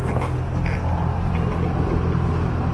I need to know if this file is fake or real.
real